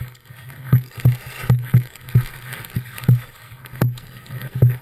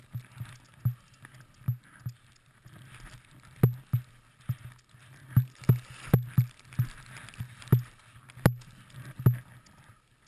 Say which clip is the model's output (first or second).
first